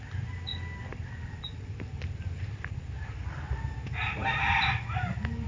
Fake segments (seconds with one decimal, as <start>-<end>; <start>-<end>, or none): none